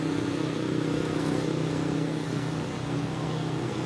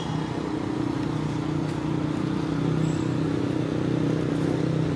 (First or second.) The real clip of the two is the second